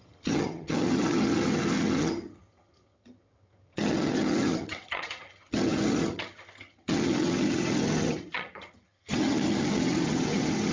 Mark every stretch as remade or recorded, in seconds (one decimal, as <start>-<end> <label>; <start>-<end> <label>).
0.0-10.7 remade